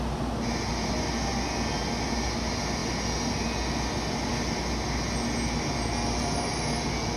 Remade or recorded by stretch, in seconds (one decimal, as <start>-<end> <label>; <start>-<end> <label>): 0.0-7.2 recorded